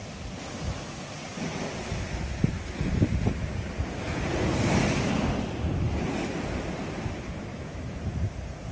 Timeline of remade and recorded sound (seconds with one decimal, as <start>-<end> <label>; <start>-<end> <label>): 0.0-7.5 recorded; 7.5-8.0 remade; 8.0-8.7 recorded